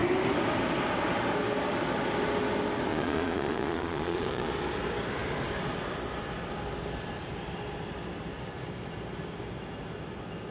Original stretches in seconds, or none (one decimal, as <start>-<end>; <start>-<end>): 0.0-2.9; 4.5-10.5

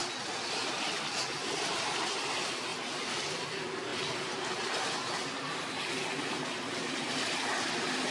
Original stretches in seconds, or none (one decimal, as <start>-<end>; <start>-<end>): 0.0-8.1

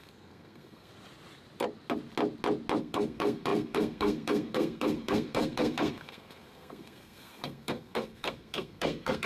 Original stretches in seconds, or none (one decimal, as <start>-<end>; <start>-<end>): 0.9-2.8

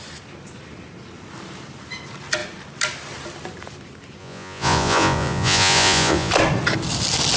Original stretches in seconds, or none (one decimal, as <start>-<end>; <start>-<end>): 0.0-4.2; 6.3-7.4